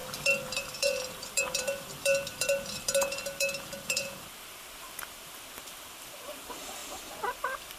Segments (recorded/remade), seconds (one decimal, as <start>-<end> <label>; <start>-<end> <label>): 0.0-7.8 remade